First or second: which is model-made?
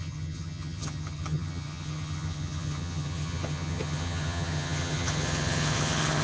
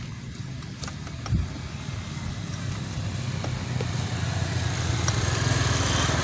first